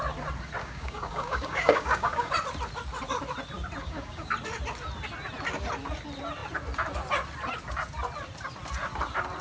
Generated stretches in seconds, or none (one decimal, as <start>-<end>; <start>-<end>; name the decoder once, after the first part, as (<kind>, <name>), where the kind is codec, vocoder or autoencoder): 0.6-2.3 (codec, DAC); 3.8-4.3